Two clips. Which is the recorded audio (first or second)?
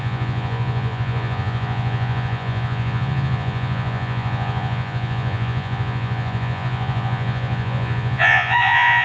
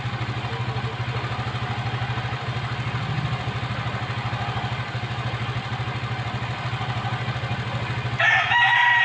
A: second